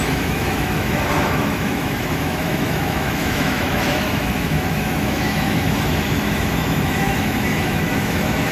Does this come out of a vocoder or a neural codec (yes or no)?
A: yes